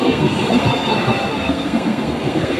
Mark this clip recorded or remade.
remade